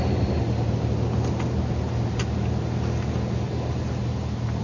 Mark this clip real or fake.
real